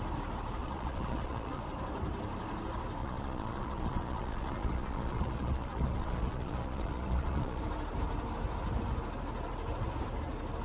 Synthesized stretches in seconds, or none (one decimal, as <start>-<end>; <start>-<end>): 0.6-1.6; 3.0-7.6